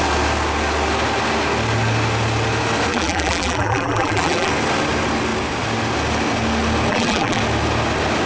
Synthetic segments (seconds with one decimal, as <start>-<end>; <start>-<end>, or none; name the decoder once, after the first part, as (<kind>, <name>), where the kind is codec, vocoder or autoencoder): 2.9-4.5 (vocoder, BigVGAN v2); 6.9-7.4